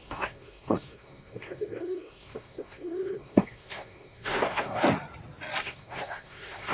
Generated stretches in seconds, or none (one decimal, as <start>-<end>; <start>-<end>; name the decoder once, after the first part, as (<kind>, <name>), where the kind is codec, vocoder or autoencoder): 0.0-4.8 (codec, SNAC); 5.6-6.7